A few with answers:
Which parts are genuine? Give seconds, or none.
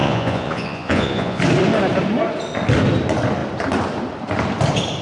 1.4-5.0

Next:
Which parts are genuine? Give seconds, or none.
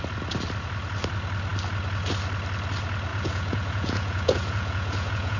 0.0-3.1